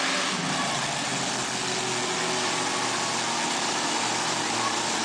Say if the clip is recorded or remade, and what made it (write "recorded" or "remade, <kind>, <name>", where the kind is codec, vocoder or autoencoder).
recorded